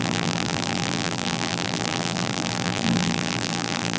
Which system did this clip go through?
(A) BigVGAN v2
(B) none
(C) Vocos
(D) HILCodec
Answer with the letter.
A